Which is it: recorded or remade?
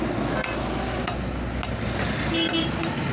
recorded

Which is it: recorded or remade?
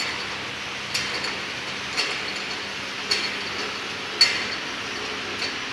recorded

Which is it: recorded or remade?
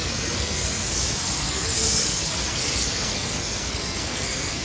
remade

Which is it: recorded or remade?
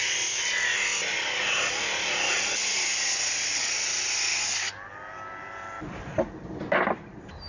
recorded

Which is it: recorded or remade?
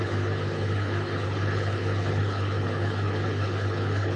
remade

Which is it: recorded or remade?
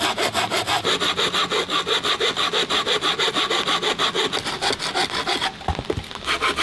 recorded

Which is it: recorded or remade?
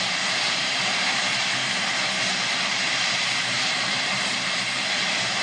remade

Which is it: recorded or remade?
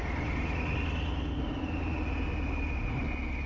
recorded